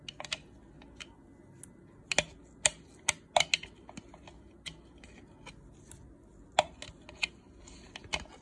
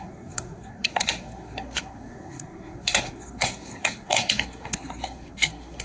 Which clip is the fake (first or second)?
second